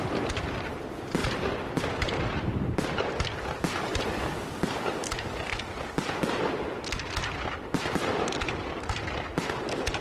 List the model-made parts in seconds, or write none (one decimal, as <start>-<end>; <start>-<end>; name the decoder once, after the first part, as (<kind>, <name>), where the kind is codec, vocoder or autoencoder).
1.2-1.8 (vocoder, BigVGAN v2)